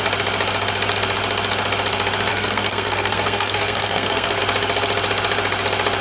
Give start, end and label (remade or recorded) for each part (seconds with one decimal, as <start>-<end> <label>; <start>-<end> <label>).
0.0-2.3 recorded; 2.3-4.4 remade; 4.4-6.0 recorded